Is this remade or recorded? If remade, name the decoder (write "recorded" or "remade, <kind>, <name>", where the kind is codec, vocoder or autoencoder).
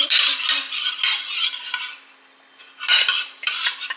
recorded